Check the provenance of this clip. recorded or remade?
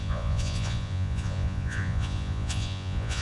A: remade